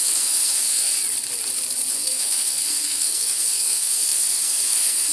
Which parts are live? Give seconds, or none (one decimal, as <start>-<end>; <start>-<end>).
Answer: 0.9-1.9